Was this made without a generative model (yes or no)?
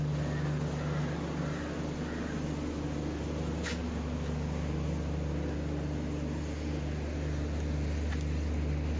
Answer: yes